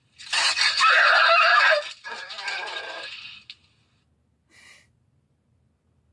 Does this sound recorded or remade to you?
recorded